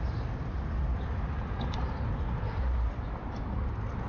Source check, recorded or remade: recorded